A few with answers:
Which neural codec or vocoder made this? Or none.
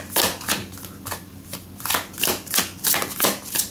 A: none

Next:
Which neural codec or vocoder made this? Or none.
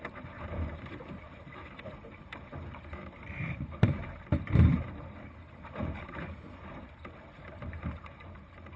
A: vocoder, BigVGAN v2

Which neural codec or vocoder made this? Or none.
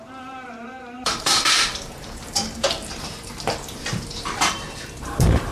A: vocoder, BigVGAN v2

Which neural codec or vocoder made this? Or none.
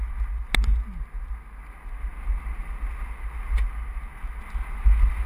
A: none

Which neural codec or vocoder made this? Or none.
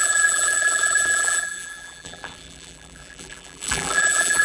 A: vocoder, BigVGAN v2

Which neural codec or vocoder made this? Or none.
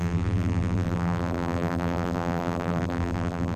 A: vocoder, BigVGAN v2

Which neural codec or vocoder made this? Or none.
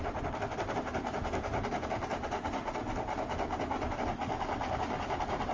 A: none